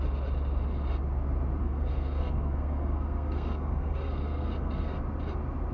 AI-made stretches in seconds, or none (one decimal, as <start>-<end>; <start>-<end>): 1.6-5.0